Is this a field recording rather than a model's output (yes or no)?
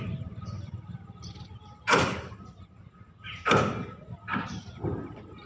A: yes